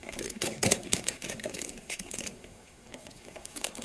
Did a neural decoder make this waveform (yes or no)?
yes